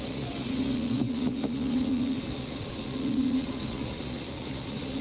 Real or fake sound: fake